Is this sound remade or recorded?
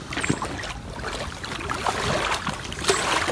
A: recorded